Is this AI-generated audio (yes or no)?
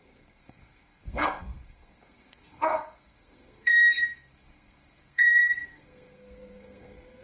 yes